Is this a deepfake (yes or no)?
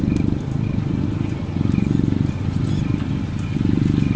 no